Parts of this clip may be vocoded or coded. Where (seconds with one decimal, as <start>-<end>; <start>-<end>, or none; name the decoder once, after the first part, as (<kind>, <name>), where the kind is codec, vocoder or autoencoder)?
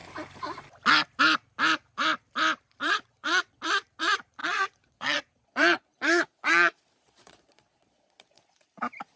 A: 2.8-3.6 (vocoder, Vocos); 4.4-8.6